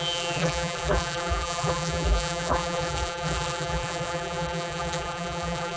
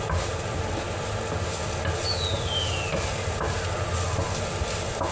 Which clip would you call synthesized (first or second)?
first